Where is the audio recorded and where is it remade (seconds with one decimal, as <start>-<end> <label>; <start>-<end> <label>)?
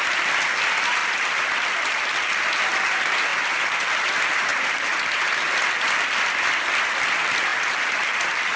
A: 0.0-1.0 recorded; 1.0-2.4 remade; 2.4-3.3 recorded; 3.3-3.9 remade; 3.9-4.5 recorded; 4.5-5.2 remade; 5.2-7.5 recorded; 7.5-8.6 remade